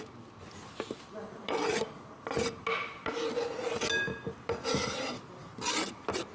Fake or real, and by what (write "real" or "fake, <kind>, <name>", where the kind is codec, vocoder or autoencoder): real